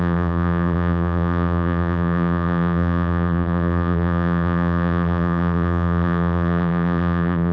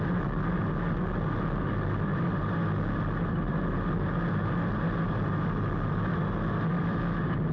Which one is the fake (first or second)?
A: first